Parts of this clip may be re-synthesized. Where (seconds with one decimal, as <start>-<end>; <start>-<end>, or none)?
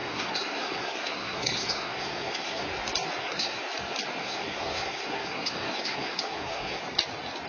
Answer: 0.0-2.7; 3.2-3.6; 4.2-6.8